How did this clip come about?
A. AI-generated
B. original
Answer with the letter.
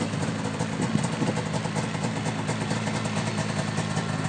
B